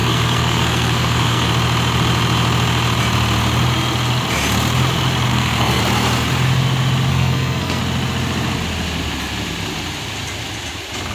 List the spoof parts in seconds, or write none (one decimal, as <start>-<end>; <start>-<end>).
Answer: 0.0-1.5; 5.3-5.8; 7.1-7.8